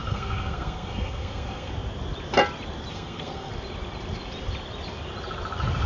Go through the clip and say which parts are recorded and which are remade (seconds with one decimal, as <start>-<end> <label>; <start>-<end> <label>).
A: 0.0-1.7 remade; 1.7-2.9 recorded; 2.9-3.5 remade; 3.5-5.9 recorded